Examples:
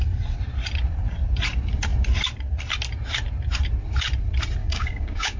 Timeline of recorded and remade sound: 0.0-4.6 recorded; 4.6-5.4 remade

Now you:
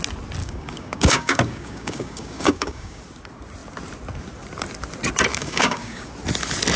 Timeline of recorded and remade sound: 0.0-0.4 recorded; 0.4-3.0 remade; 3.0-5.3 recorded; 5.3-6.1 remade; 6.1-6.8 recorded

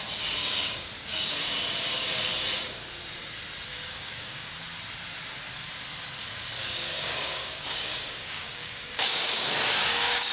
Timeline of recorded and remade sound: 0.0-0.4 recorded; 0.4-1.3 remade; 1.3-3.7 recorded; 3.7-4.5 remade; 4.5-6.6 recorded; 6.6-10.3 remade

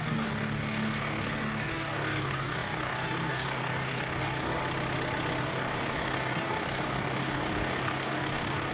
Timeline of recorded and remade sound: 0.0-4.6 remade; 4.6-5.4 recorded; 5.4-8.7 remade

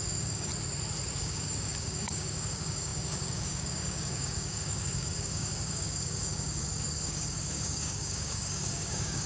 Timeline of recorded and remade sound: 0.0-0.5 remade; 0.5-1.2 recorded; 1.2-9.3 remade

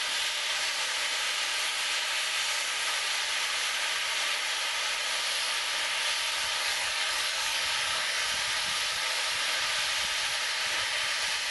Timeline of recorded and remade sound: 0.0-6.6 recorded; 6.6-8.2 remade; 8.2-11.5 recorded

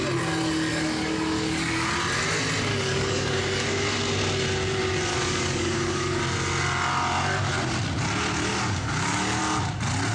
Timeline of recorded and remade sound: 0.0-0.7 recorded; 0.7-1.9 remade; 1.9-2.7 recorded; 2.7-3.7 remade; 3.7-5.1 recorded; 5.1-6.2 remade; 6.2-8.5 recorded; 8.5-9.4 remade; 9.4-10.1 recorded

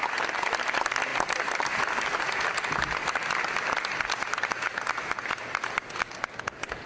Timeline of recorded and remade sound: 0.0-6.9 recorded